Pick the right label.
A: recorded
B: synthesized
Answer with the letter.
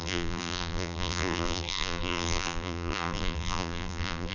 B